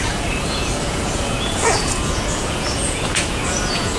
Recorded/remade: remade